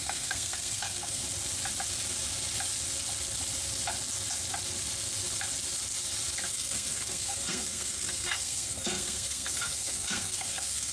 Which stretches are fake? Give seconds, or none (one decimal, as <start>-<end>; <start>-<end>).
0.0-1.2; 6.5-10.9